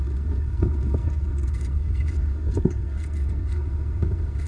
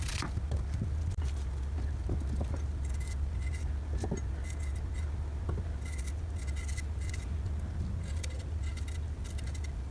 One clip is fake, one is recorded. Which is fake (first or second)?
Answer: first